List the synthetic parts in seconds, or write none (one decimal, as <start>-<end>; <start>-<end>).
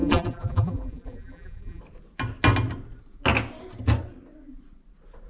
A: 0.0-1.8